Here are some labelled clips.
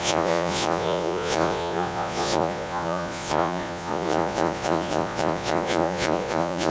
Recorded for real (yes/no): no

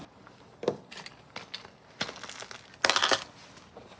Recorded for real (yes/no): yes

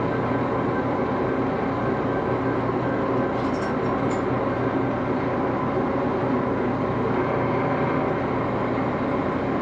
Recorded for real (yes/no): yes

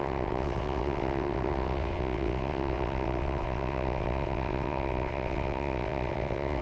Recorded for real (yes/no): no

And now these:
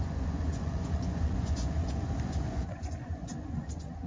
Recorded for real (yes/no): no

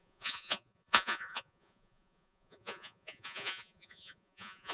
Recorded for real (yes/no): no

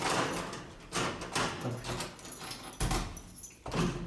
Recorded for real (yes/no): yes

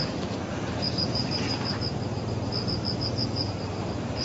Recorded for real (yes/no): yes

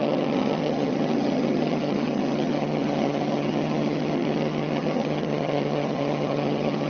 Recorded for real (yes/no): no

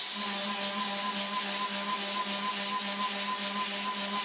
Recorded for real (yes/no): yes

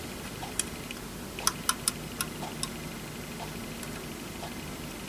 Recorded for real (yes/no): yes